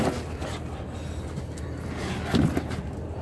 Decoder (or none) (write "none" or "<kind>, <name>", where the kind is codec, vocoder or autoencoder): none